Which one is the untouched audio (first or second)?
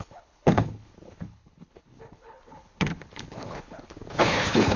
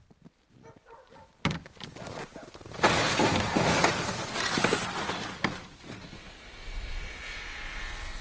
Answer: second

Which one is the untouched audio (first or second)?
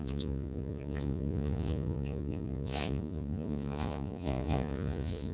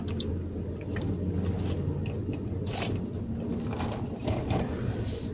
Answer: second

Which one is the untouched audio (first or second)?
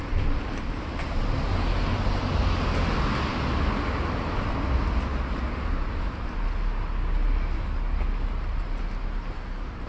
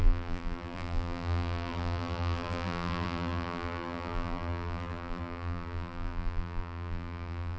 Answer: first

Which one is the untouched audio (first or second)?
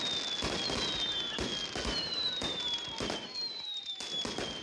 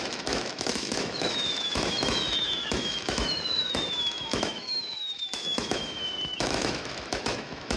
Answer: first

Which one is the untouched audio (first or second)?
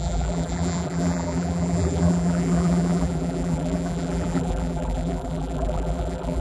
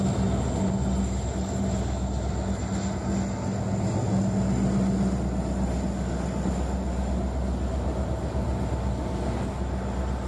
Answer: second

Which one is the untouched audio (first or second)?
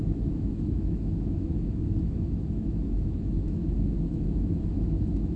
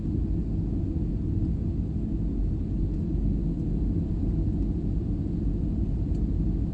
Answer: second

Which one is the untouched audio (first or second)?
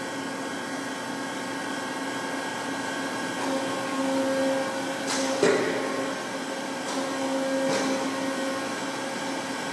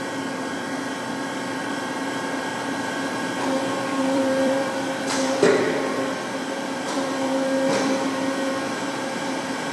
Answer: first